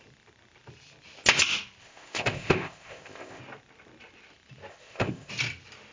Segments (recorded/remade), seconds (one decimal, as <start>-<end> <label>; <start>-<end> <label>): 0.0-1.8 recorded; 1.8-3.4 remade; 3.4-4.7 recorded; 4.7-5.3 remade; 5.3-5.9 recorded